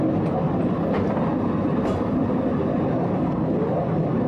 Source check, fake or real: real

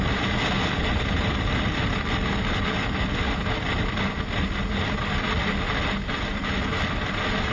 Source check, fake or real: real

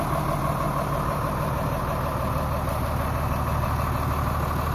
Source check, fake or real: real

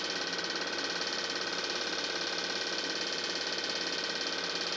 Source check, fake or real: real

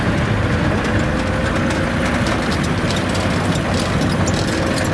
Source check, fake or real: real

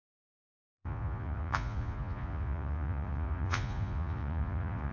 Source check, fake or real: fake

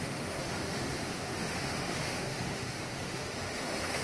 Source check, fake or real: fake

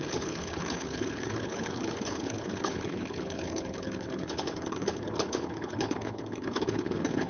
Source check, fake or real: fake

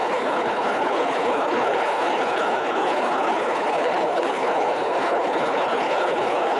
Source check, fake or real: fake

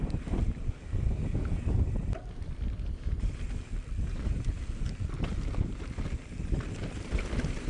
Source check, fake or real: real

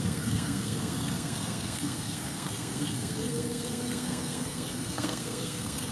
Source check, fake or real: fake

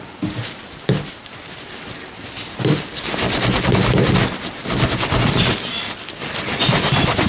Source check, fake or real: real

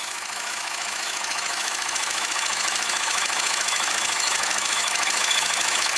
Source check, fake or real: fake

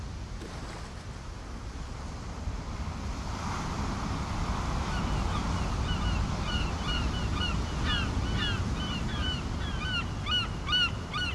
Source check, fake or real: real